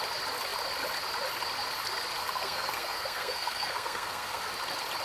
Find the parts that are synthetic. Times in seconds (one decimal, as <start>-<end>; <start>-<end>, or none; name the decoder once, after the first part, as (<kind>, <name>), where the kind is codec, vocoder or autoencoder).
2.2-4.4 (codec, SNAC)